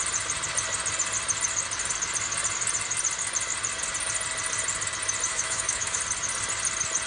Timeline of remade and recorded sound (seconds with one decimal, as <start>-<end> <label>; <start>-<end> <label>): 0.0-5.3 recorded; 5.3-6.0 remade; 6.0-7.1 recorded